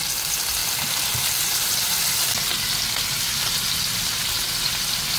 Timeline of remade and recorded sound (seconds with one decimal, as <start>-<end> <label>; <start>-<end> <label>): 0.0-5.2 recorded